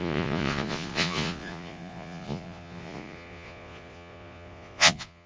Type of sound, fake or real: fake